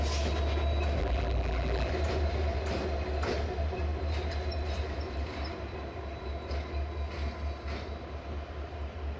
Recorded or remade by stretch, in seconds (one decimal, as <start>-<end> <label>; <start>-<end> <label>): 0.0-1.0 recorded; 1.0-1.9 remade; 1.9-9.2 recorded